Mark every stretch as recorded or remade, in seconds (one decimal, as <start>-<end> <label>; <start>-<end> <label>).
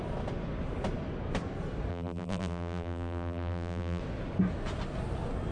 0.0-1.9 recorded; 1.9-4.0 remade; 4.0-5.5 recorded